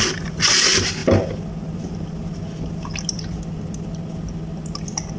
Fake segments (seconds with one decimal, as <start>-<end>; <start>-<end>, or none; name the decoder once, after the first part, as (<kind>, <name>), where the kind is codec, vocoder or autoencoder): none